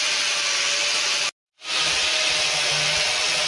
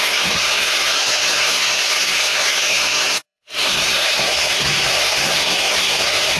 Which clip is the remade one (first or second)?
second